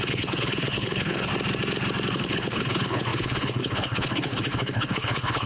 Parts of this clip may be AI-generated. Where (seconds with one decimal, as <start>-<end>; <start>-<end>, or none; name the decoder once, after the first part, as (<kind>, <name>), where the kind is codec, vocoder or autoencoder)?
0.0-1.3 (codec, HILCodec); 2.1-5.5